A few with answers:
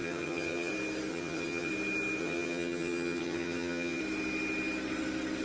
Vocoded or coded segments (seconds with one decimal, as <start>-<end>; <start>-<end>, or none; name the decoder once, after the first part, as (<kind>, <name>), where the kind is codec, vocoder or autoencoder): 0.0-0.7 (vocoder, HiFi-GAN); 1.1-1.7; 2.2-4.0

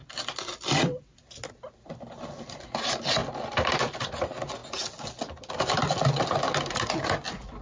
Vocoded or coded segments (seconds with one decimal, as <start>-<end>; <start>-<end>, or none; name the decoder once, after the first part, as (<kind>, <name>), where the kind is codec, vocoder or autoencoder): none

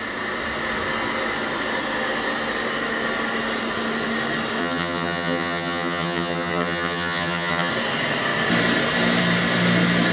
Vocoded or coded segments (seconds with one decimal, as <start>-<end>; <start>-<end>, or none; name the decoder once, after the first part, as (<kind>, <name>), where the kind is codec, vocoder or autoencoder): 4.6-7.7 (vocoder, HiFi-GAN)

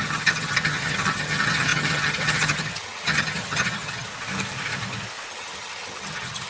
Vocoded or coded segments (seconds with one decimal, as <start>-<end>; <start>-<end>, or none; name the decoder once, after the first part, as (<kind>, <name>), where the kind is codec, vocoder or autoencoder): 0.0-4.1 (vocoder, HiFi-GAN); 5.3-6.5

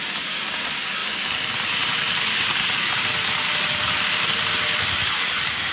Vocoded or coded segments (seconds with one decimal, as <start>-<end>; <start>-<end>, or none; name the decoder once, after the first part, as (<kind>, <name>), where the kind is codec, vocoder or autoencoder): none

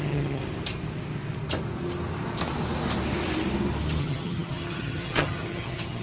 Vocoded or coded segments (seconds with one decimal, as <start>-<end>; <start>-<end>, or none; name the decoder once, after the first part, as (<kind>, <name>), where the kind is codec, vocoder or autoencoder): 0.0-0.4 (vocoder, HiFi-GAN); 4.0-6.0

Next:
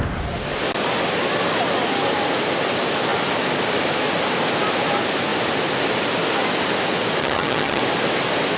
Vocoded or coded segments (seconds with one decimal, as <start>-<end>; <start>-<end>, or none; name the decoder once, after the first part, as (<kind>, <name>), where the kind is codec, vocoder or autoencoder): 7.2-7.8 (vocoder, HiFi-GAN)